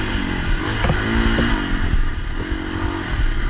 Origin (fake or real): real